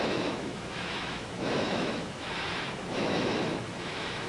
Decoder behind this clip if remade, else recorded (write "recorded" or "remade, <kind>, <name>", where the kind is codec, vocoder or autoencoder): remade, autoencoder, DAC-VAE